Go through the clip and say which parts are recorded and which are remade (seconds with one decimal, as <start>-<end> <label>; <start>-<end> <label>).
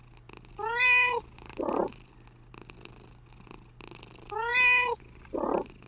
0.0-5.9 recorded